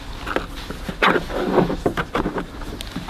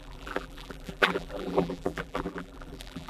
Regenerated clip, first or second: second